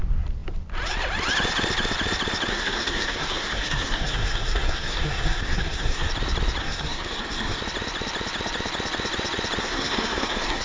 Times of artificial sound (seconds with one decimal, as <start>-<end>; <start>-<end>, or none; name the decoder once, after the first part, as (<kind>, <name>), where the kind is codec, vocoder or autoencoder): 2.5-6.1 (codec, SNAC); 6.6-7.6; 9.6-10.6